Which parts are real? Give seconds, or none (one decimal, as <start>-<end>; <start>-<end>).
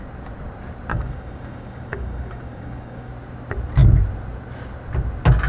0.0-0.9; 3.1-5.5